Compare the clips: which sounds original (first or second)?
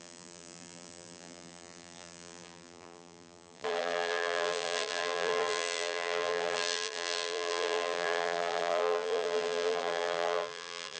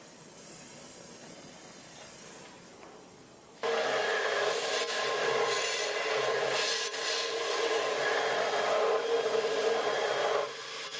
second